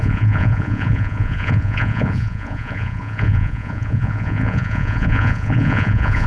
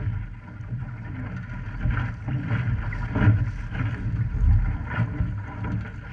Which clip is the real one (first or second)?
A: second